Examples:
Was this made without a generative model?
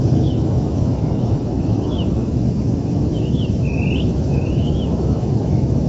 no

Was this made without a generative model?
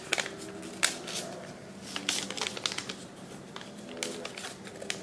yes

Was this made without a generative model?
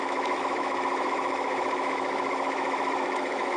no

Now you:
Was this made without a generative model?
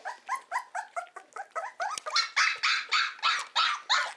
yes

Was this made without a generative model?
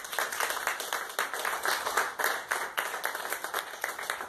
yes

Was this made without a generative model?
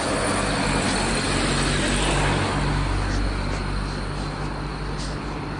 yes